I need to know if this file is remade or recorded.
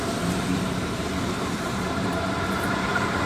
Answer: remade